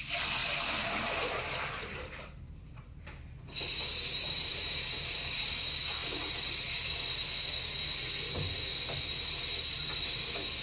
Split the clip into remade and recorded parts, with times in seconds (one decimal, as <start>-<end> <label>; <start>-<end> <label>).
0.0-0.4 recorded; 0.4-3.0 remade; 3.0-3.9 recorded; 3.9-5.6 remade; 5.6-6.0 recorded; 6.0-6.5 remade; 6.5-10.6 recorded